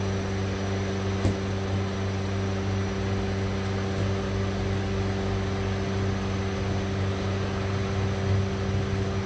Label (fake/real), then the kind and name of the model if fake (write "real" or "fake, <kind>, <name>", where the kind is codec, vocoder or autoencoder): real